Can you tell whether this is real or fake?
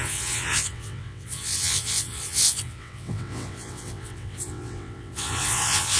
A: fake